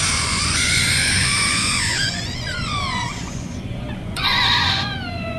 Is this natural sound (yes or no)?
no